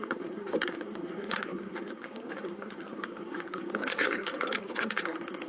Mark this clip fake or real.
fake